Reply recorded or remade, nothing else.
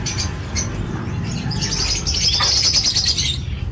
recorded